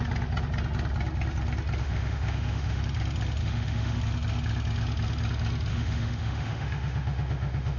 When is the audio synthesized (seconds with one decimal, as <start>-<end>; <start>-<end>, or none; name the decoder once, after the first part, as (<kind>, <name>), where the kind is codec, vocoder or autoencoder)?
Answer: 1.8-2.8 (autoencoder, DAC-VAE); 3.4-4.0; 5.7-7.8